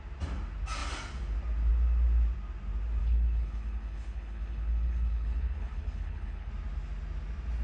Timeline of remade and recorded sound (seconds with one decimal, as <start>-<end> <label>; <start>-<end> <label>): 0.0-3.0 recorded; 3.0-6.5 remade; 6.5-7.6 recorded